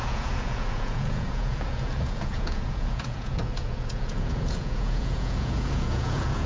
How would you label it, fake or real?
fake